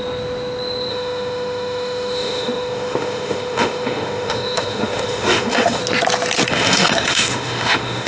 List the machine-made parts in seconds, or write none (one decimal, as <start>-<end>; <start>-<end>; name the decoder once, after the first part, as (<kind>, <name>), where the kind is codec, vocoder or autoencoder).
0.9-5.8 (autoencoder, DAC-VAE); 6.5-8.1